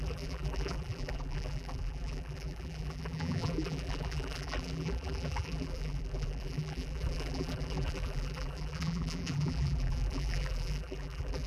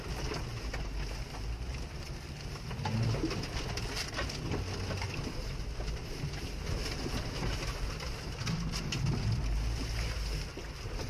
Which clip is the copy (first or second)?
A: first